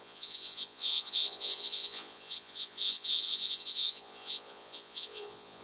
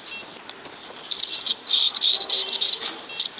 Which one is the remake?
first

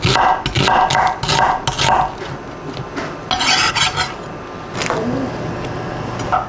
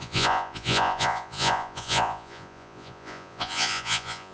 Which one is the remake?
second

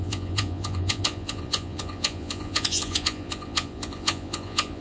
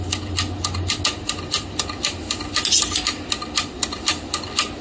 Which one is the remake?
first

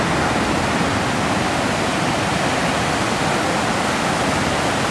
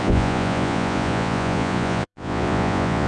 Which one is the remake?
second